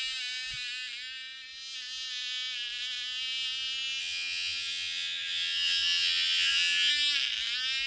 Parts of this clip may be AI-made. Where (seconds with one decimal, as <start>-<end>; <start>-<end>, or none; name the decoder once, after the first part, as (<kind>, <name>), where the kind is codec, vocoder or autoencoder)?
4.0-6.9 (vocoder, HiFi-GAN)